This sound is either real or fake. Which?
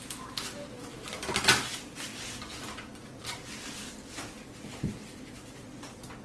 real